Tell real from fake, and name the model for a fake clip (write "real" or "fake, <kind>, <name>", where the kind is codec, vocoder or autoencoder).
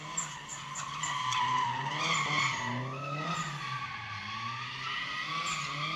real